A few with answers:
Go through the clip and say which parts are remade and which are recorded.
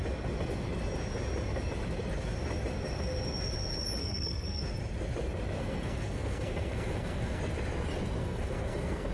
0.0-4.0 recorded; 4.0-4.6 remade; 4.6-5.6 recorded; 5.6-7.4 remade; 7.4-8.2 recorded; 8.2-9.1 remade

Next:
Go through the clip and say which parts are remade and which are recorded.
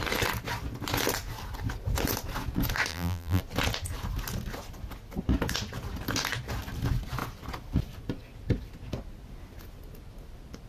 0.0-2.9 recorded; 2.9-3.4 remade; 3.4-10.7 recorded